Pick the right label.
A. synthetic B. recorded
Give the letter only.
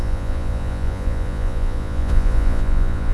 A